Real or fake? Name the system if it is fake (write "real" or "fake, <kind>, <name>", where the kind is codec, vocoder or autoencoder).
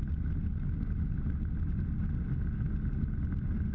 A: real